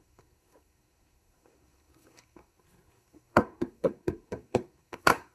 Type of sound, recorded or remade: remade